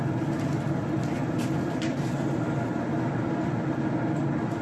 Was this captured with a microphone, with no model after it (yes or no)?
yes